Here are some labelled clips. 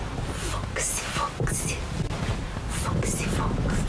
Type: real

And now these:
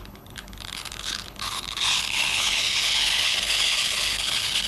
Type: fake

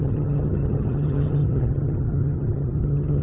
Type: fake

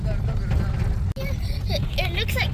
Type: real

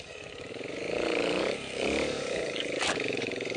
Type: fake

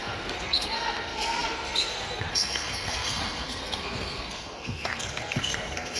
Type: fake